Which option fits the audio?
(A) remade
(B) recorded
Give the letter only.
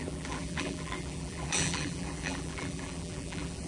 A